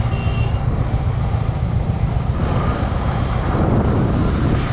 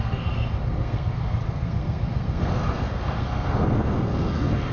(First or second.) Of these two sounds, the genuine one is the first